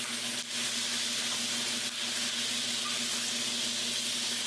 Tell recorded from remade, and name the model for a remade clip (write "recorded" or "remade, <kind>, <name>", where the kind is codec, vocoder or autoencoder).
recorded